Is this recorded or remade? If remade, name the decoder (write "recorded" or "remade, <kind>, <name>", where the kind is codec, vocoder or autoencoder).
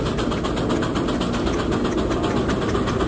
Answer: recorded